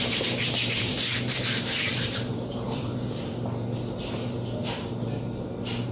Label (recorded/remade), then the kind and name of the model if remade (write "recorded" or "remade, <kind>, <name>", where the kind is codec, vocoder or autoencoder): remade, vocoder, BigVGAN v2